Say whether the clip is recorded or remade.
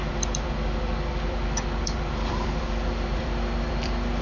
remade